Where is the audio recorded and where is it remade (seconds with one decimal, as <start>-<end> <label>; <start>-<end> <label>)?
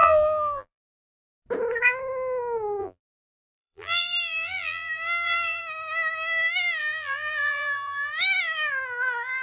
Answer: 0.0-0.8 remade; 0.8-2.8 recorded; 2.8-5.6 remade; 5.6-6.8 recorded; 6.8-8.1 remade; 8.1-9.4 recorded